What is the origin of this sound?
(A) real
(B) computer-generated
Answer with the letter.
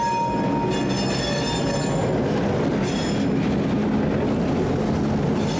A